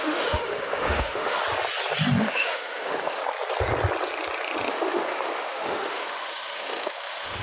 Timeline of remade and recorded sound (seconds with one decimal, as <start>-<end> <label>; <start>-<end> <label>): 0.0-1.4 remade; 1.4-2.2 recorded; 2.2-3.2 remade; 3.2-4.7 recorded; 4.7-7.4 remade